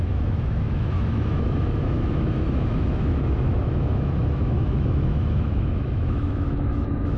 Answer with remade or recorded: remade